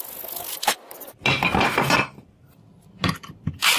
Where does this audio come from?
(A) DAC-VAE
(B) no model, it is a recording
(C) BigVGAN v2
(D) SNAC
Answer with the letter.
B